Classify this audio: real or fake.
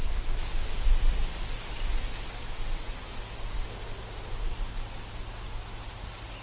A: real